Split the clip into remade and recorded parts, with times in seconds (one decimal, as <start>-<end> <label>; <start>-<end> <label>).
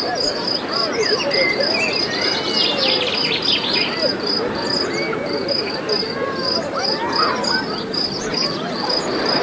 0.0-9.4 recorded